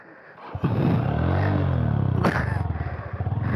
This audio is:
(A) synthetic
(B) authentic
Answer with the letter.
B